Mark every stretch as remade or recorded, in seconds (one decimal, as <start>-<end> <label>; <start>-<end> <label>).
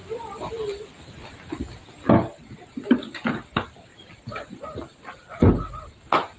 0.0-6.4 recorded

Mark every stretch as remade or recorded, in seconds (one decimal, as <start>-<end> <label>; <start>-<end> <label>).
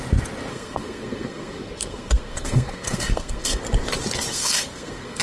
0.0-0.5 recorded; 0.5-3.6 remade; 3.6-4.3 recorded; 4.3-5.2 remade